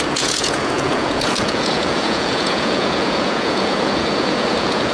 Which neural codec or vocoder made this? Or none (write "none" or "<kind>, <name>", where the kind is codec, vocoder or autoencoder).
vocoder, Vocos